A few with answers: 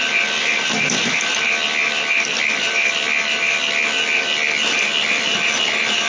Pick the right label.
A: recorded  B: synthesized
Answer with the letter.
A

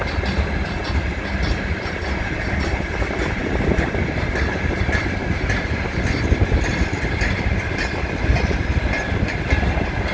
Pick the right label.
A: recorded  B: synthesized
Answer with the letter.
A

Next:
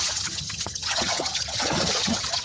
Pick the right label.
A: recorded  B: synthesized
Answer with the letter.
B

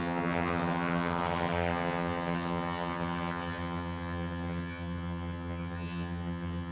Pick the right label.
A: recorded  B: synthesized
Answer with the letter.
B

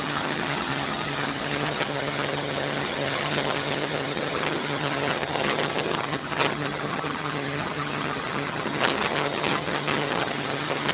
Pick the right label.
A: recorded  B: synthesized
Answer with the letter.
B